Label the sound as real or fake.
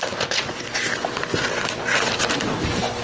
real